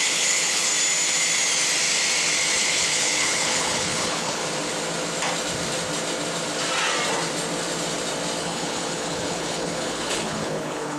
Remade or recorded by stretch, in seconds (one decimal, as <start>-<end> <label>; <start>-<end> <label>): 0.0-0.7 remade; 0.7-2.6 recorded; 2.6-4.4 remade; 4.4-8.4 recorded; 8.4-11.0 remade